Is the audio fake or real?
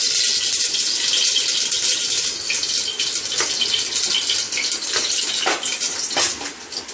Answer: real